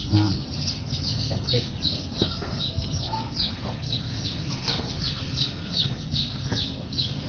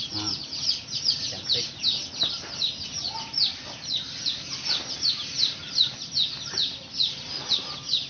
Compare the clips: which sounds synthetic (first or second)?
first